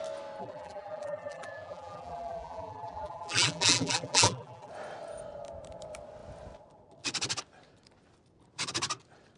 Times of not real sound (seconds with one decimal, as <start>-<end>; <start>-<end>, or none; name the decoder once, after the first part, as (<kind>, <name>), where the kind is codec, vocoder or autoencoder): 0.4-4.7 (vocoder, BigVGAN v2)

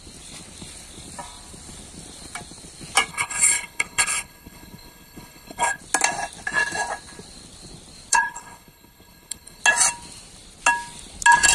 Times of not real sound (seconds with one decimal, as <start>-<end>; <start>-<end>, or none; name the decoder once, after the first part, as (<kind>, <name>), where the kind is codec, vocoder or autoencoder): 3.1-5.8 (codec, HILCodec); 8.1-9.6

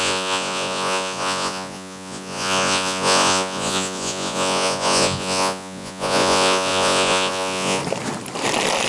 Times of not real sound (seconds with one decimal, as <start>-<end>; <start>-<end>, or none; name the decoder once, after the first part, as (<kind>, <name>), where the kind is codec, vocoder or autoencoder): 0.0-7.8 (vocoder, Vocos)

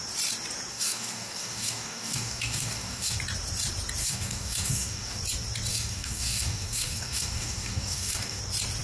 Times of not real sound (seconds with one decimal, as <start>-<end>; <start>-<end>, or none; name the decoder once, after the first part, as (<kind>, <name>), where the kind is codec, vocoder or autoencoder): 0.7-3.2 (codec, DAC); 4.0-5.2; 5.7-8.4

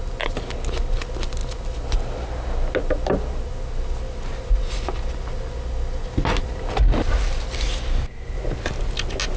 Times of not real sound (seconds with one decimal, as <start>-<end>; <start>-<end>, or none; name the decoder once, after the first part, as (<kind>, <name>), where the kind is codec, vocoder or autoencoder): none

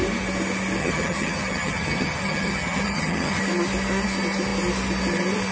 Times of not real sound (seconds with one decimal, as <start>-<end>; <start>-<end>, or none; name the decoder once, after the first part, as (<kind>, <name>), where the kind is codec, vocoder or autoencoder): 0.8-3.4 (vocoder, HiFi-GAN)

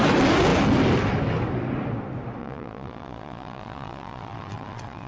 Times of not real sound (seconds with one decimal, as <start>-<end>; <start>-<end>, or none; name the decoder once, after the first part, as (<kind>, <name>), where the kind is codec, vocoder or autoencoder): 2.4-5.1 (vocoder, Vocos)

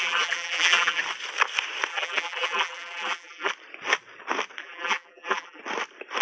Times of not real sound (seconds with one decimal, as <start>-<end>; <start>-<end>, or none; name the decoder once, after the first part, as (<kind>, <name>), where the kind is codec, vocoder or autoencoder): 0.0-1.0 (vocoder, BigVGAN v2); 1.9-3.5; 4.6-5.6